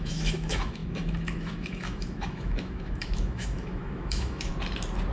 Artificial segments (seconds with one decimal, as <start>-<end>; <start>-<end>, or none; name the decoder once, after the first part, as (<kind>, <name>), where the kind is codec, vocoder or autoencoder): 0.0-4.5 (autoencoder, DAC-VAE)